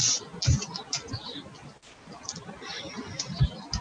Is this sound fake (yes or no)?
no